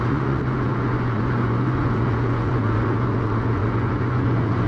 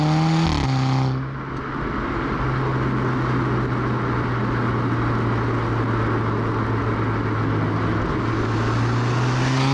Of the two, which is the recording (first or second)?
second